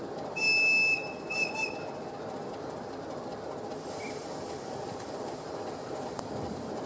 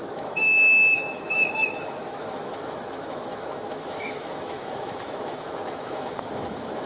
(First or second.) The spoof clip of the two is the second